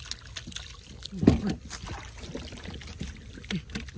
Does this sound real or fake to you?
real